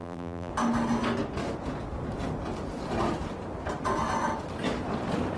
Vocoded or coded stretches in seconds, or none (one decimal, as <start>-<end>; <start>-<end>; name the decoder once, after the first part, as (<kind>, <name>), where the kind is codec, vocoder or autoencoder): 0.0-0.5 (vocoder, BigVGAN v2)